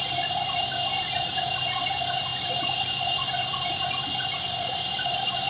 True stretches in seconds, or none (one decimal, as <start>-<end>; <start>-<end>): 0.0-5.5